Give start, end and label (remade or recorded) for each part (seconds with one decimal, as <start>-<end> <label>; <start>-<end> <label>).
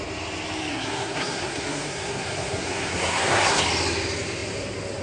0.0-0.7 recorded; 0.7-3.6 remade; 3.6-5.0 recorded